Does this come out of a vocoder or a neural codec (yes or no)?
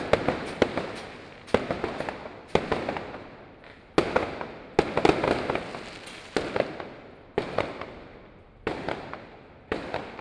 no